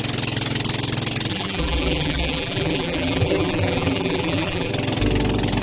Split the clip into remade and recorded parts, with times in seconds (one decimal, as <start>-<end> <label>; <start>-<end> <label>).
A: 0.0-1.3 recorded; 1.3-4.7 remade; 4.7-5.6 recorded